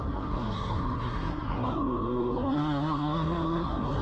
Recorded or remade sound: remade